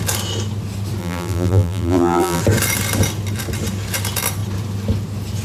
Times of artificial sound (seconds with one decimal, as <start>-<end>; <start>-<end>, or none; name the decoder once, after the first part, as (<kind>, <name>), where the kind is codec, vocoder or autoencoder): 1.0-2.4 (vocoder, BigVGAN v2)